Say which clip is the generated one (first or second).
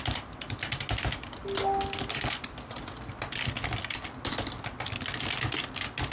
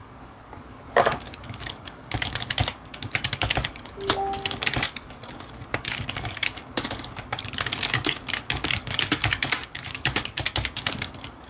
second